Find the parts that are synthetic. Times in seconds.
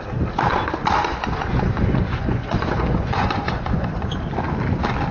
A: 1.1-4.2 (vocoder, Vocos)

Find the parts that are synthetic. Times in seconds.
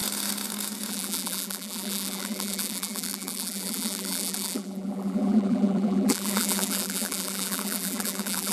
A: 0.9-8.5 (vocoder, BigVGAN v2)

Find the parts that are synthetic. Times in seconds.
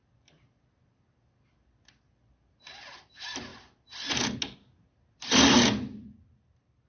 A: none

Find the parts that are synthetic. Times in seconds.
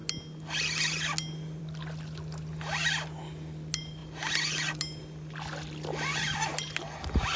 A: none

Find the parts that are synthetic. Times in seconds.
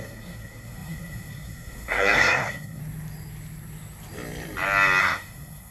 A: 0.0-2.8 (codec, SNAC); 5.0-5.7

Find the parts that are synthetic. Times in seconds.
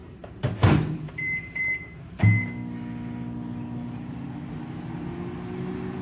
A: 0.0-2.2 (vocoder, BigVGAN v2)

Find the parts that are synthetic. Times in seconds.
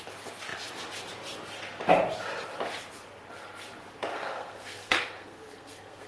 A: 4.1-6.1 (codec, SNAC)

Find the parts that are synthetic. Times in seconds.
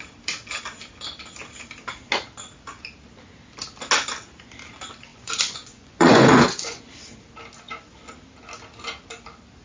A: 5.1-6.8 (vocoder, Vocos)